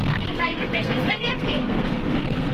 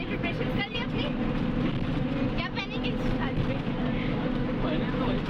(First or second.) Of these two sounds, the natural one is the second